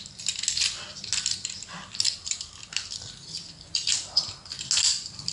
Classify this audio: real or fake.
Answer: real